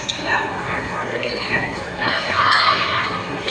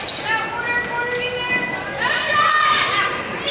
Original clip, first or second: second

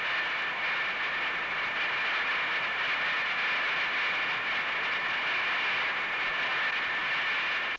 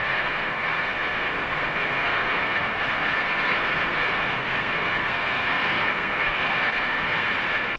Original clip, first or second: first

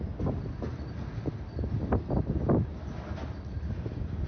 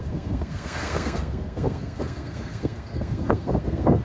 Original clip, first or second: first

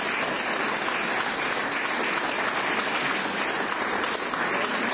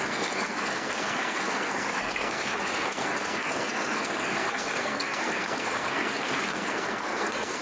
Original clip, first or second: first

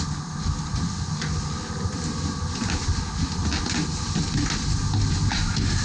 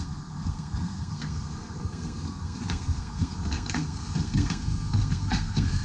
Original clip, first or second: first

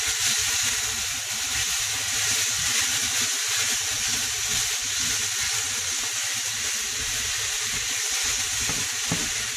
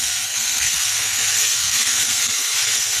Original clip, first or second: first